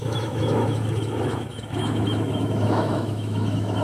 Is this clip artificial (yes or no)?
yes